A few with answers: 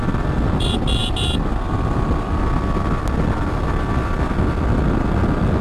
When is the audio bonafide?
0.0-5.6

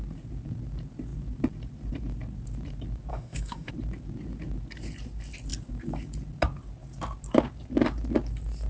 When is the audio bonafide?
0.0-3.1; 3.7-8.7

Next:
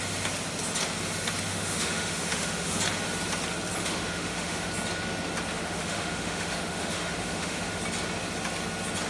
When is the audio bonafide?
0.0-1.5; 2.8-3.8; 4.7-5.5; 7.8-9.1